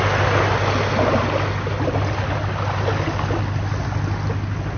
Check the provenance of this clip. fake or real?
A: real